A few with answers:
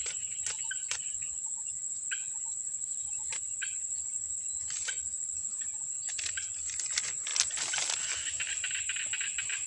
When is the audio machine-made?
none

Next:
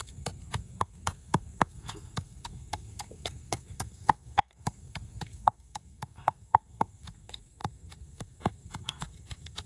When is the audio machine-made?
0.0-9.7 (codec, SNAC)

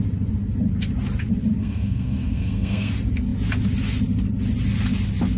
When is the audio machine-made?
1.6-2.9 (codec, SNAC)

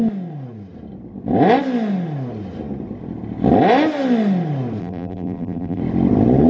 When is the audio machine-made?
4.8-5.8 (vocoder, BigVGAN v2)

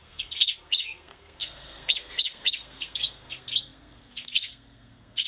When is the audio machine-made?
0.0-5.3 (codec, SNAC)